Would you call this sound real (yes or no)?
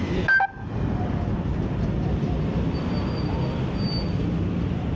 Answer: yes